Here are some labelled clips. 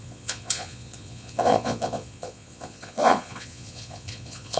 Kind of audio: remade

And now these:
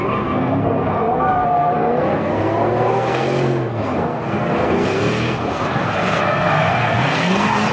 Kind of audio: remade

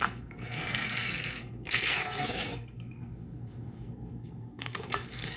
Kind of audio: remade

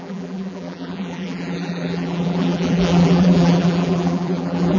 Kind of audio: remade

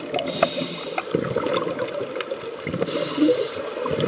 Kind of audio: recorded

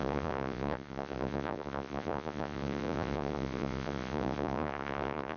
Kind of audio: remade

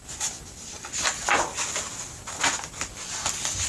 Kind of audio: recorded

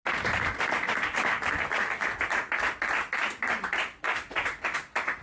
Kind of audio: recorded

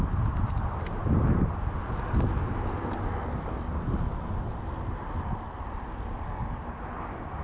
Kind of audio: recorded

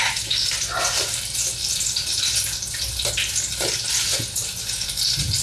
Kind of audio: recorded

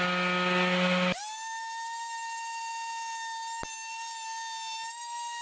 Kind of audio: recorded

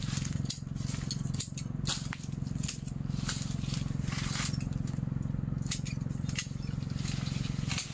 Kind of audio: recorded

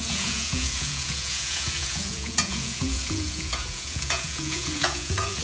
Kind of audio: remade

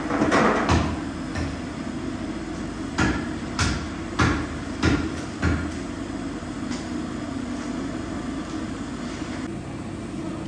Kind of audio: recorded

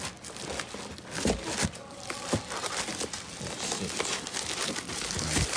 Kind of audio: recorded